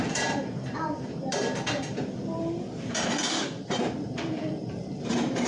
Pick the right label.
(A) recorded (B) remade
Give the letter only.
B